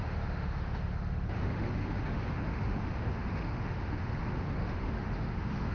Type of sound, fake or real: fake